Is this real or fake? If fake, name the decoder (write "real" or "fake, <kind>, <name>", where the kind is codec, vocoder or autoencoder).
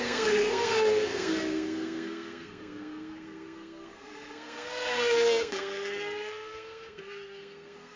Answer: fake, codec, SNAC